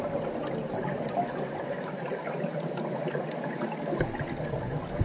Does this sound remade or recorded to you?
recorded